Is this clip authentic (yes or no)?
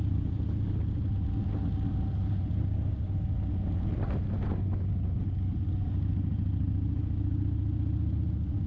yes